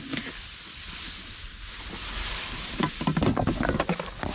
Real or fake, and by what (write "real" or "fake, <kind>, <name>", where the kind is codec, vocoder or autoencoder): real